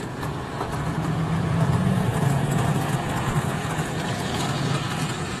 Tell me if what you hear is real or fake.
fake